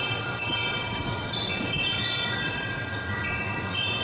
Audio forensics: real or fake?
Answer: fake